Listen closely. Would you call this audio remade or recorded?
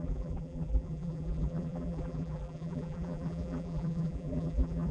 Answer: remade